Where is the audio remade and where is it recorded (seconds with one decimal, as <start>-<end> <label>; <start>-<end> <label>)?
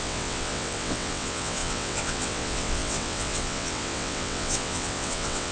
0.0-5.5 remade